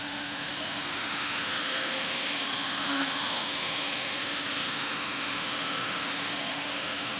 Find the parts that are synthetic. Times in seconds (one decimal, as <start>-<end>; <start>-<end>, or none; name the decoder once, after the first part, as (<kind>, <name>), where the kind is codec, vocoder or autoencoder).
0.0-7.2 (autoencoder, DAC-VAE)